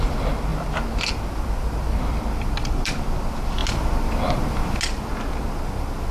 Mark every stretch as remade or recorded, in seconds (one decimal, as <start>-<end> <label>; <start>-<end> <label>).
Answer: 0.0-6.1 recorded